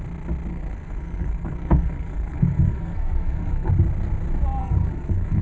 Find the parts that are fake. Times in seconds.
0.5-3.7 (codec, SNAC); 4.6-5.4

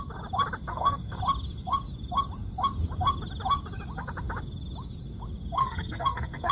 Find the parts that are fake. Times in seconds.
0.7-1.2 (codec, SNAC); 5.6-6.5

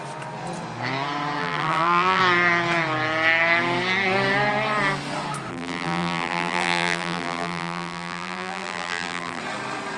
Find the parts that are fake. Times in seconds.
1.4-2.2 (vocoder, BigVGAN v2); 5.5-9.4

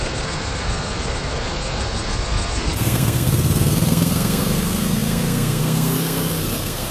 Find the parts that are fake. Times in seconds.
0.0-6.9 (codec, SNAC)

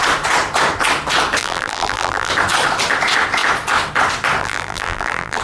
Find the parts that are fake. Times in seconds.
1.4-2.3 (vocoder, BigVGAN v2); 4.4-5.4

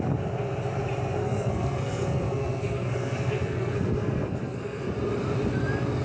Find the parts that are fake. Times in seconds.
1.2-4.8 (codec, SNAC)

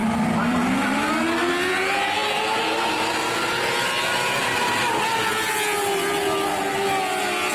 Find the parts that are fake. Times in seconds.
0.0-1.1 (vocoder, BigVGAN v2)

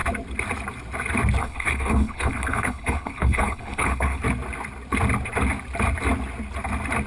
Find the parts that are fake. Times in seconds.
1.4-4.2 (codec, HILCodec)